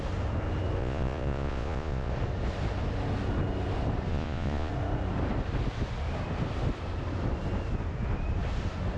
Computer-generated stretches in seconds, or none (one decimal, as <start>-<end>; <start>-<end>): 0.8-2.1; 4.1-4.7